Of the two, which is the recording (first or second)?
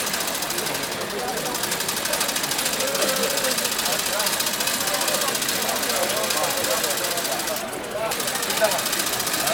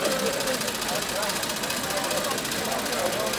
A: first